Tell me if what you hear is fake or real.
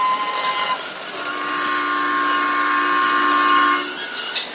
real